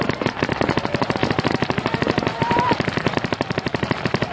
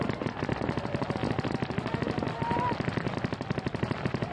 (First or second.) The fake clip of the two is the first